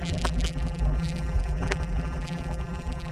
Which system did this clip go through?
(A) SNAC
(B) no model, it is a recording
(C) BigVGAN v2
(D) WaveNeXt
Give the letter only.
C